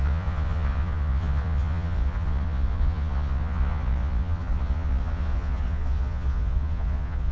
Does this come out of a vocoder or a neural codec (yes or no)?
yes